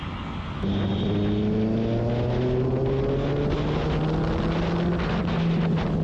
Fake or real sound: real